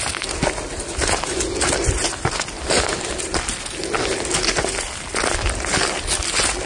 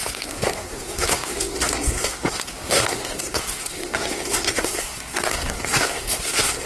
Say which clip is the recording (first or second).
first